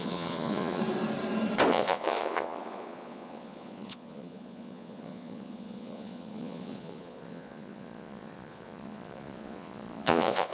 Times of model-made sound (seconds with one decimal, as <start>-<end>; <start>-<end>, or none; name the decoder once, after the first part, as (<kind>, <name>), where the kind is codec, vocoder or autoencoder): 0.0-0.8 (vocoder, Vocos); 1.7-10.5